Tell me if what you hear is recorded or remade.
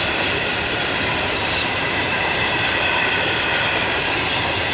remade